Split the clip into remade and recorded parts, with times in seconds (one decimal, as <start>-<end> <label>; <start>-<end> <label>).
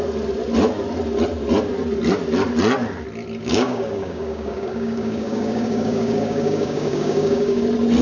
0.0-3.4 recorded; 3.4-7.6 remade; 7.6-8.0 recorded